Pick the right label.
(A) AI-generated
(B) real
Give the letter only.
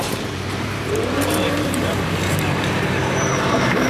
A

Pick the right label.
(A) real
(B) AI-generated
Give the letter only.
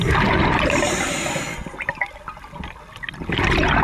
A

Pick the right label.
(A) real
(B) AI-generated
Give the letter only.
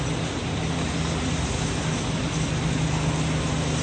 A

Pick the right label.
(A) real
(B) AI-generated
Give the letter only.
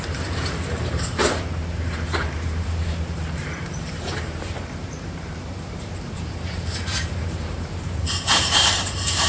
B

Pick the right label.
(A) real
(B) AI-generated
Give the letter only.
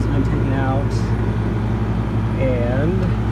A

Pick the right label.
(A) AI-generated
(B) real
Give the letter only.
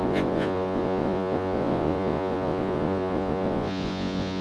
A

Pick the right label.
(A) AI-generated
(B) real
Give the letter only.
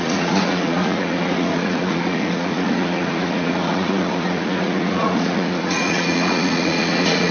A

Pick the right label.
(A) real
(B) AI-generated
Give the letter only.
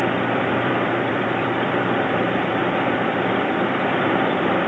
B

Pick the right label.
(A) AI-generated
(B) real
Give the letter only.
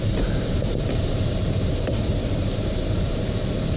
A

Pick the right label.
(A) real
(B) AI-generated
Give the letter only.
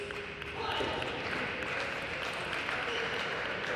A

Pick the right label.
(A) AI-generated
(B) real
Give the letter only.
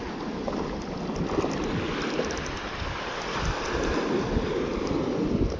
B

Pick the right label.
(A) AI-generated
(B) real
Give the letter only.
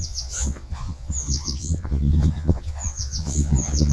A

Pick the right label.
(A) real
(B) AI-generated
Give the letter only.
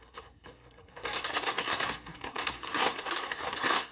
B